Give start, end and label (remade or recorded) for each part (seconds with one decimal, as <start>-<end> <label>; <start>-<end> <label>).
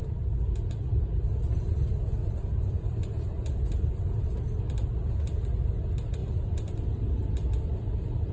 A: 0.0-0.6 remade; 0.6-2.2 recorded; 2.2-4.4 remade; 4.4-8.3 recorded